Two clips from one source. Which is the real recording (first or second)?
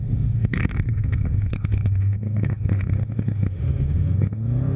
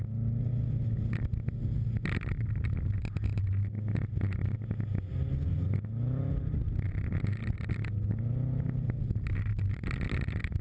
second